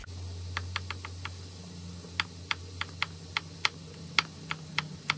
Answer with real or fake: real